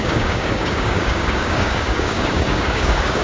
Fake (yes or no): yes